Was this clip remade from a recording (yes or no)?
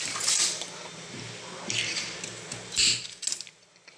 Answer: no